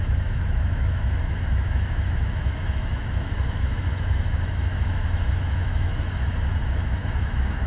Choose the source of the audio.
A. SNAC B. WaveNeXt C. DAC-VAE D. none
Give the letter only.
C